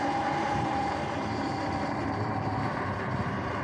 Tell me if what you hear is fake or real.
fake